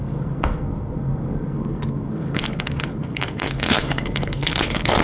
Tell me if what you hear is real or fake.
fake